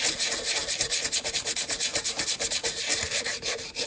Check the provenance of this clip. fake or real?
fake